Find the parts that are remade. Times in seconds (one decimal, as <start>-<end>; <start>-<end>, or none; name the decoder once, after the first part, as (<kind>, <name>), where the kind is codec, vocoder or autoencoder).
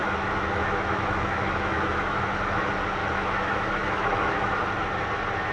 0.0-2.4 (autoencoder, DAC-VAE); 3.0-4.5